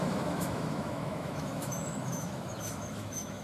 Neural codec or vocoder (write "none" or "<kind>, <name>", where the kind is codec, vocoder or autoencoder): autoencoder, DAC-VAE